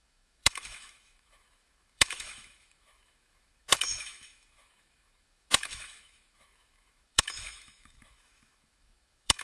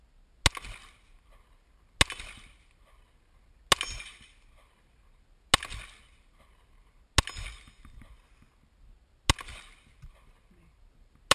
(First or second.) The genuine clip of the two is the second